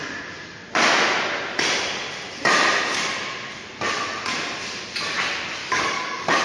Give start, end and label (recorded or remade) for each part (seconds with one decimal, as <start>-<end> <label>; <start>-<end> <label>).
0.0-5.6 recorded; 5.6-6.4 remade